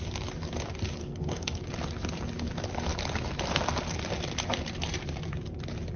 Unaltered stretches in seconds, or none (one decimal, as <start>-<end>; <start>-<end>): 0.0-1.0; 1.6-6.0